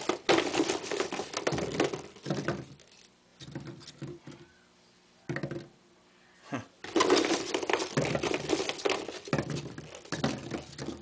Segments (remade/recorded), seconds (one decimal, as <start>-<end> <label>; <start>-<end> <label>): 0.0-11.0 recorded